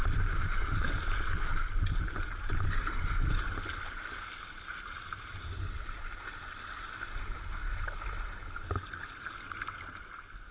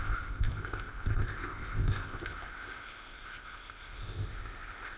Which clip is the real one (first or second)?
first